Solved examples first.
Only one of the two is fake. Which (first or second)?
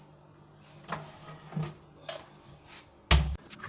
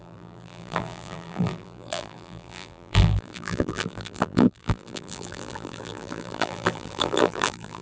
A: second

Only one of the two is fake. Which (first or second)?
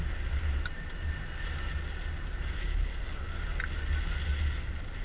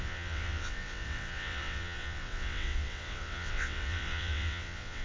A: second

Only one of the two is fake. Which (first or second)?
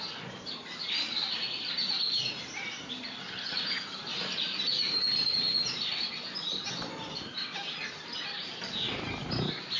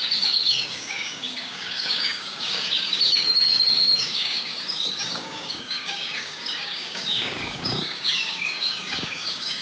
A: second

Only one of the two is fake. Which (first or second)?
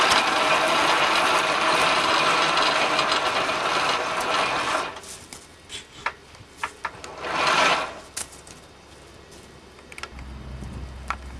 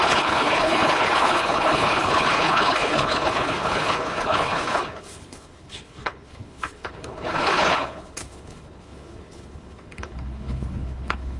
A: second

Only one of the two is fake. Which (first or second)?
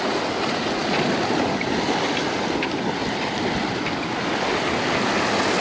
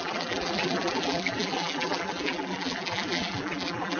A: second